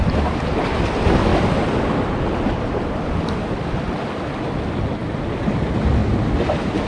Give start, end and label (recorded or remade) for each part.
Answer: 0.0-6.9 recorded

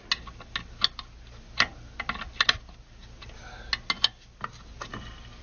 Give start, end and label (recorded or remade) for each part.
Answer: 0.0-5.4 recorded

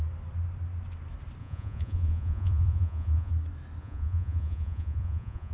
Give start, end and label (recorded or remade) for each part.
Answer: 0.0-1.4 recorded; 1.4-3.3 remade; 3.3-3.8 recorded; 3.8-5.5 remade

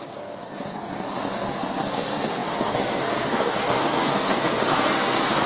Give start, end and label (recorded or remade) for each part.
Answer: 0.0-5.5 remade

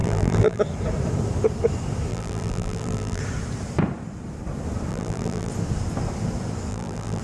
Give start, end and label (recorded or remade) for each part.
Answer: 0.0-0.6 remade; 0.6-2.1 recorded; 2.1-3.2 remade; 3.2-4.9 recorded; 4.9-5.5 remade; 5.5-6.7 recorded; 6.7-7.2 remade

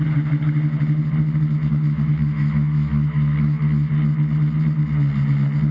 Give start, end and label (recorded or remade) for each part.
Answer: 0.0-1.6 recorded; 1.6-3.9 remade; 3.9-5.7 recorded

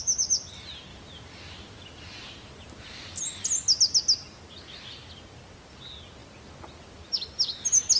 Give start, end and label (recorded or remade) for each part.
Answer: 0.0-8.0 recorded

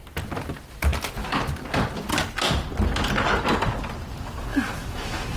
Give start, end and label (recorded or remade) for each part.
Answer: 0.0-4.5 recorded; 4.5-5.4 remade